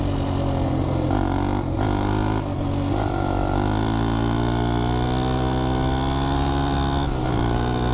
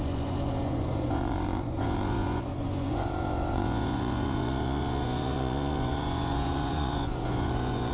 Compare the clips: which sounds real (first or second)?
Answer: first